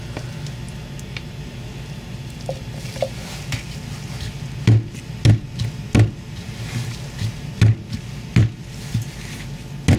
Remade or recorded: recorded